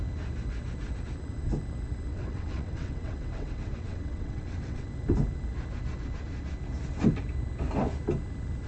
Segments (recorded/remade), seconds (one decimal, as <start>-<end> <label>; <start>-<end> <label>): 0.0-2.1 recorded; 2.1-4.9 remade; 4.9-8.7 recorded